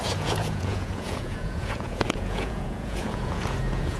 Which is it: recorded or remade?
remade